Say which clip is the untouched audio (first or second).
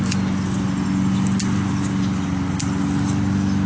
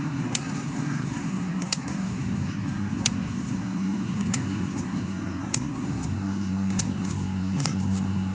first